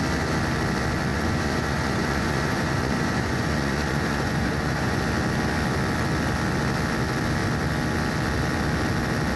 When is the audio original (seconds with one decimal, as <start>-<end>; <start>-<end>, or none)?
0.0-1.1; 5.0-9.4

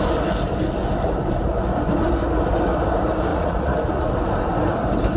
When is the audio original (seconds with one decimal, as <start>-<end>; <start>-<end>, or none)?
0.0-3.3; 4.1-5.2

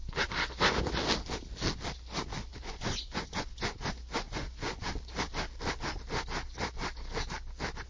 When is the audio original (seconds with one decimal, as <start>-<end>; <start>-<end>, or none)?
0.0-2.5; 4.9-7.9

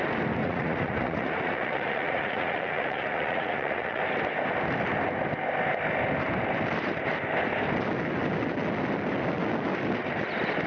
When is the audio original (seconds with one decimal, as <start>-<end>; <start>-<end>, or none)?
0.0-0.4; 4.0-10.7

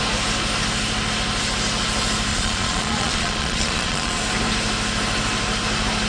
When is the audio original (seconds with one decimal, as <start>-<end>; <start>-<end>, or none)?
0.0-2.3; 4.2-6.1

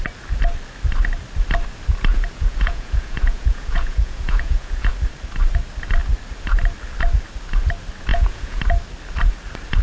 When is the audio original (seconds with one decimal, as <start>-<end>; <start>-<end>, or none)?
0.0-2.1; 4.9-8.1; 8.6-9.8